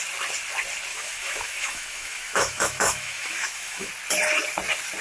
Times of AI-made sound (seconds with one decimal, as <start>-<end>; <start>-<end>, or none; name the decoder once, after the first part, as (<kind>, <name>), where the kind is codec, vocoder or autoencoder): 0.9-3.9 (autoencoder, DAC-VAE)